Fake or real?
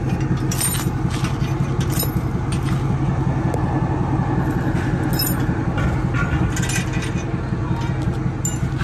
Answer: real